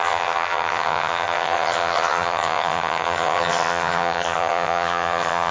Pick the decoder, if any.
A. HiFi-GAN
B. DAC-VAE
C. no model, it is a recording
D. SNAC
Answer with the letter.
A